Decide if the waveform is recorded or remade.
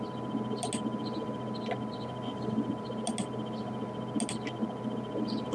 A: recorded